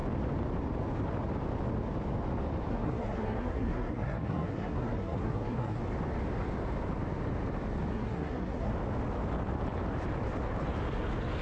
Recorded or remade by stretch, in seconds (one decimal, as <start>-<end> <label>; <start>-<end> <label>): 0.0-2.7 recorded; 2.7-5.8 remade; 5.8-7.9 recorded; 7.9-8.7 remade; 8.7-11.4 recorded